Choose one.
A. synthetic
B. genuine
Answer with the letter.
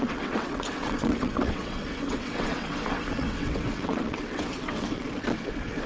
A